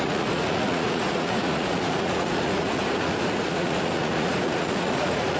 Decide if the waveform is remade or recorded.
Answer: remade